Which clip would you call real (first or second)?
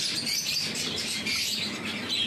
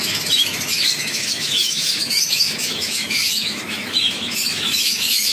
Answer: first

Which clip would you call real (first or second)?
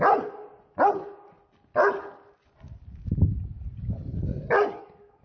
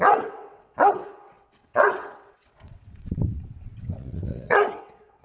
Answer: first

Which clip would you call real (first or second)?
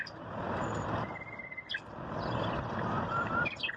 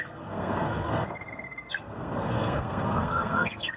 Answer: first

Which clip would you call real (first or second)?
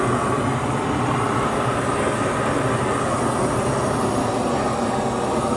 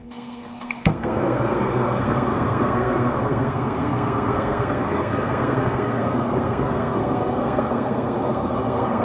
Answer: first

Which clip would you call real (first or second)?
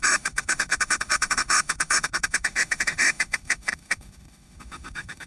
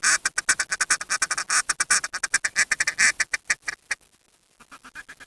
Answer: second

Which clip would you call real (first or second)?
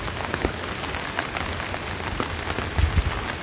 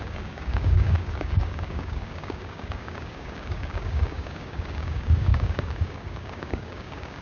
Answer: first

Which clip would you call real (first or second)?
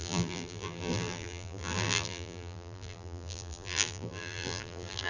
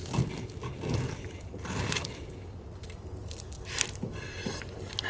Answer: second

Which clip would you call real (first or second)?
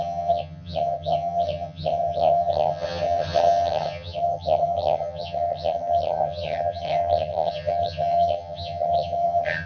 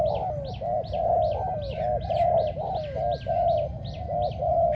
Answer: second